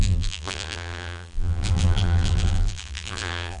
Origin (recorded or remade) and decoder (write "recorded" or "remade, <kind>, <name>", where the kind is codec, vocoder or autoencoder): remade, vocoder, BigVGAN v2